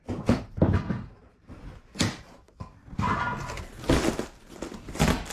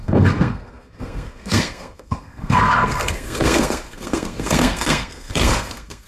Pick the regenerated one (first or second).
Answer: second